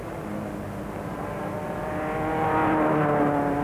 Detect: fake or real real